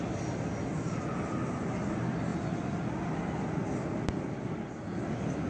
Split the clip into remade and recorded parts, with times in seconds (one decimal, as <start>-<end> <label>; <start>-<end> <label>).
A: 0.0-5.5 recorded